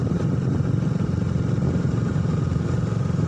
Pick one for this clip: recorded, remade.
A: recorded